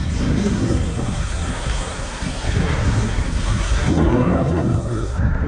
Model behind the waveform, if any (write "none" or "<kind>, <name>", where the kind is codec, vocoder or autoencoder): codec, SNAC